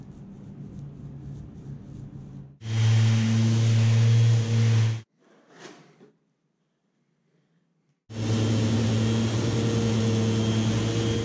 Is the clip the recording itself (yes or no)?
yes